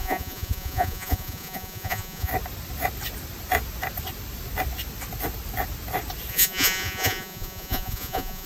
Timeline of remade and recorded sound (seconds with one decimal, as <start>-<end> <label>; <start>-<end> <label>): 0.0-2.3 remade; 2.3-6.3 recorded; 6.3-8.5 remade

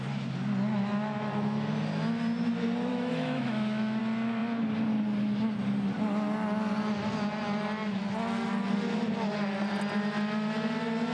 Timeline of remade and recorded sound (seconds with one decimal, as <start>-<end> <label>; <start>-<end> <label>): 0.0-2.9 recorded; 2.9-4.0 remade; 4.0-11.1 recorded

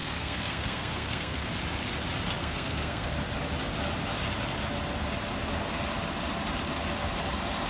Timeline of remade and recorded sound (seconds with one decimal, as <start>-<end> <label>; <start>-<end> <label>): 0.0-1.5 remade; 1.5-2.4 recorded; 2.4-3.1 remade; 3.1-7.7 recorded

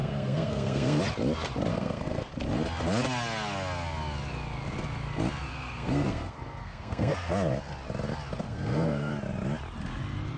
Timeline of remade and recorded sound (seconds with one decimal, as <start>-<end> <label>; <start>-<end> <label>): 0.0-1.0 remade; 1.0-1.7 recorded; 1.7-2.3 remade; 2.3-5.5 recorded; 5.5-7.3 remade; 7.3-8.4 recorded; 8.4-9.1 remade; 9.1-10.4 recorded

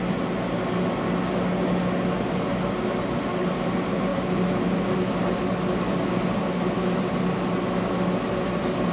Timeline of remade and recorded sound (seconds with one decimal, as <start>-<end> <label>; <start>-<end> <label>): 0.0-4.1 recorded; 4.1-5.4 remade; 5.4-8.9 recorded

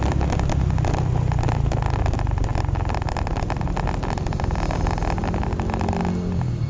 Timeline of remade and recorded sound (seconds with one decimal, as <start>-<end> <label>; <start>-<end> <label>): 0.0-6.7 recorded

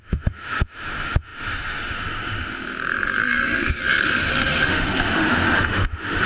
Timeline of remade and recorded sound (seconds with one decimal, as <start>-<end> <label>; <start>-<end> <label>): 0.0-6.3 remade

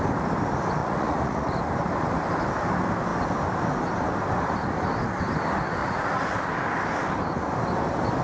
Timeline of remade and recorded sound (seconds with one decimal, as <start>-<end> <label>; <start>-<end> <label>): 0.0-0.8 recorded; 0.8-1.5 remade; 1.5-5.8 recorded; 5.8-6.4 remade; 6.4-8.2 recorded